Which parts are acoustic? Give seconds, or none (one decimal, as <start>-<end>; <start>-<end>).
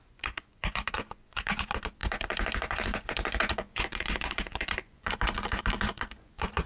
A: none